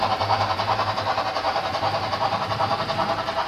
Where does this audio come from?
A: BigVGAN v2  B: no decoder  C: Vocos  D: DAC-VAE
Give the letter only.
B